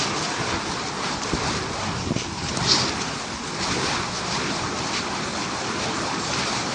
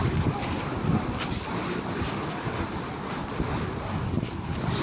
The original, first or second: second